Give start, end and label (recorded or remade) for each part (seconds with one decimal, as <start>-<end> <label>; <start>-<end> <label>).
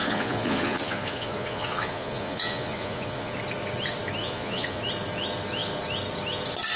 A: 0.0-3.3 remade; 3.3-4.2 recorded; 4.2-4.8 remade; 4.8-6.8 recorded